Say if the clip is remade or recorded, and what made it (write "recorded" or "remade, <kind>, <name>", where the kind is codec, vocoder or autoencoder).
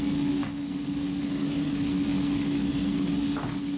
remade, codec, SNAC